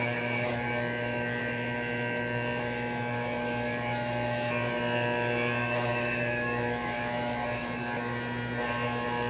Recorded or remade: remade